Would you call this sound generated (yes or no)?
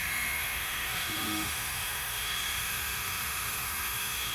yes